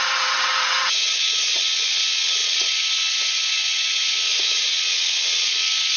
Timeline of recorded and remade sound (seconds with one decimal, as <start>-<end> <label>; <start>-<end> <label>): 0.0-6.0 remade